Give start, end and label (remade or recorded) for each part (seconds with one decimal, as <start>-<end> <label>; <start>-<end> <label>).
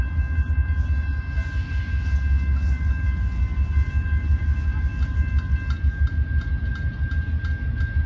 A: 0.0-8.1 recorded